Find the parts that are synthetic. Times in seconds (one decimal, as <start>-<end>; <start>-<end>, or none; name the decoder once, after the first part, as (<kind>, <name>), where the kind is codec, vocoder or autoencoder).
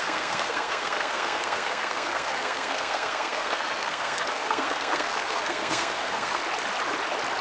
0.0-6.4 (codec, SNAC)